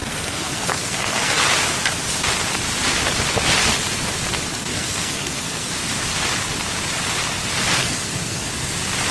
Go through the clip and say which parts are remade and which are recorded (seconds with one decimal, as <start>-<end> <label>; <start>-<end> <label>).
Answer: 0.0-1.4 remade; 1.4-4.7 recorded; 4.7-5.7 remade; 5.7-7.8 recorded; 7.8-8.5 remade; 8.5-9.1 recorded